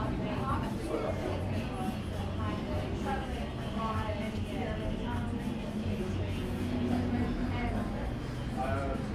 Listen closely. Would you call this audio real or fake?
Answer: real